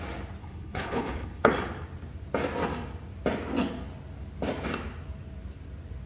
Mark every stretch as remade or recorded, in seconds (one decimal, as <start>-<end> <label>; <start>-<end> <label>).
0.0-0.4 recorded; 0.4-1.5 remade; 1.5-6.1 recorded